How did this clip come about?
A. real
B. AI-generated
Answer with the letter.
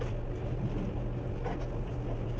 A